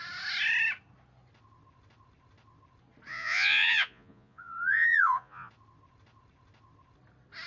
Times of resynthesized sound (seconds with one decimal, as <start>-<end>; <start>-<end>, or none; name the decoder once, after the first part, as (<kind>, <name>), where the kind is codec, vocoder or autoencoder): 3.1-5.5 (vocoder, Vocos)